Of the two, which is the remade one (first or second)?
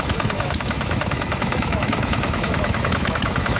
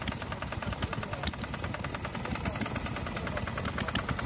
first